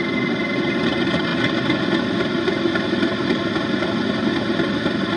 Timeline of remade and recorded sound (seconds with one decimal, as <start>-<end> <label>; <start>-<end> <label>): 0.0-1.3 remade; 1.3-4.4 recorded; 4.4-5.2 remade